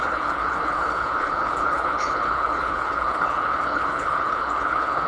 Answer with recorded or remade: remade